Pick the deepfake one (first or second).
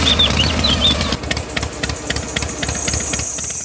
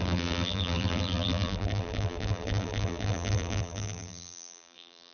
second